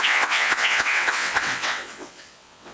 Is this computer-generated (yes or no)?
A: yes